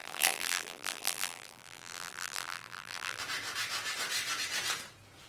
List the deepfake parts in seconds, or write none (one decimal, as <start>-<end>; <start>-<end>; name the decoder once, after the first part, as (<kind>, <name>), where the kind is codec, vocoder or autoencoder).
0.0-3.2 (vocoder, BigVGAN v2)